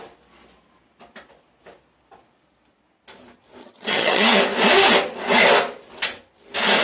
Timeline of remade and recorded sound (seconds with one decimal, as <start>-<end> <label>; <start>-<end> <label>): 0.0-3.6 recorded; 3.6-4.4 remade; 4.4-6.8 recorded